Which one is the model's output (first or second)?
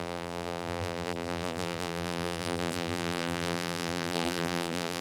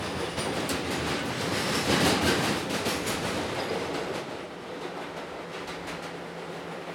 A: first